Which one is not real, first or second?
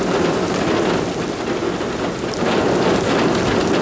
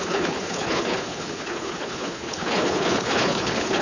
second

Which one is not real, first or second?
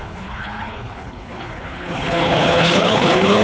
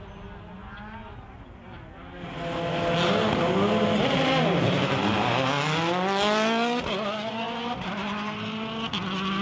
first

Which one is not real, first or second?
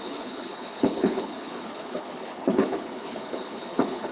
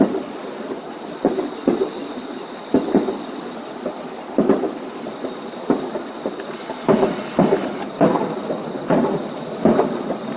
first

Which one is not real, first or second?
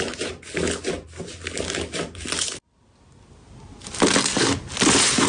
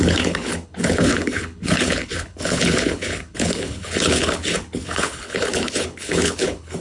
second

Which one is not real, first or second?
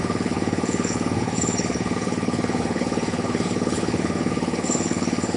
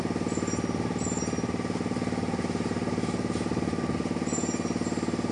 first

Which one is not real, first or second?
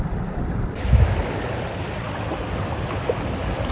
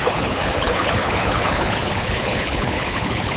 second